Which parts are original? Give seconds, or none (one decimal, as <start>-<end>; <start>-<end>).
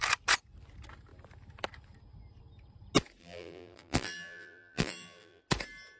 0.0-3.2; 5.4-6.0